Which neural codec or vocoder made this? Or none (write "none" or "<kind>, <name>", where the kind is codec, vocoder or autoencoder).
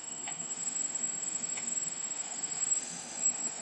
autoencoder, DAC-VAE